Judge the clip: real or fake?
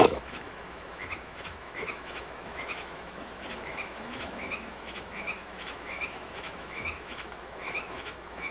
fake